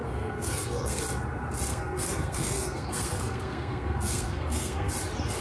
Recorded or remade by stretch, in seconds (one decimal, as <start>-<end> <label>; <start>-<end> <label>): 0.0-1.0 remade; 1.0-1.7 recorded; 1.7-4.9 remade; 4.9-5.4 recorded